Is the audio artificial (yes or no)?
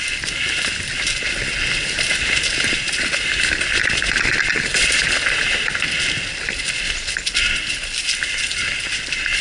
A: no